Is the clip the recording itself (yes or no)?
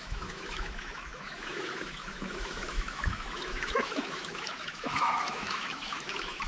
no